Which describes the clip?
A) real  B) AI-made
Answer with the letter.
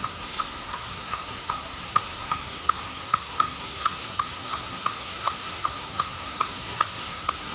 B